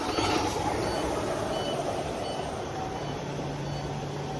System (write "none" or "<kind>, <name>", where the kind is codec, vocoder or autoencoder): none